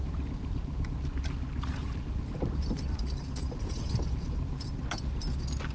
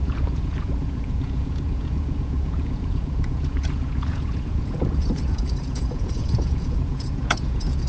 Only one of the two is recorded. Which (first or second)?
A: first